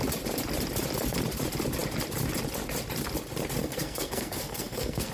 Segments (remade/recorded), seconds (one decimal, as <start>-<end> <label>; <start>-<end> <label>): 0.0-3.6 recorded; 3.6-5.1 remade